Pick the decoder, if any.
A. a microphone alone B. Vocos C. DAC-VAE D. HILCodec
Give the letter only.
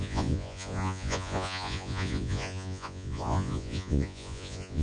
B